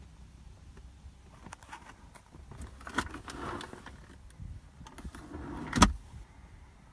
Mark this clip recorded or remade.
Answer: recorded